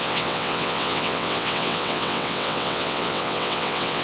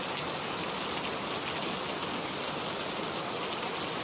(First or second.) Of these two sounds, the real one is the second